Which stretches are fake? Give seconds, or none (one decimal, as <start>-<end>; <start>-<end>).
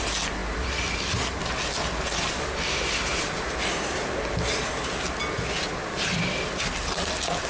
none